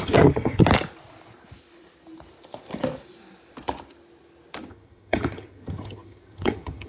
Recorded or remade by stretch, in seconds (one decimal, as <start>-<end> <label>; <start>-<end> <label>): 0.0-0.6 remade; 0.6-4.7 recorded; 4.7-6.9 remade